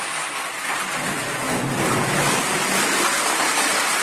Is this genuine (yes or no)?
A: yes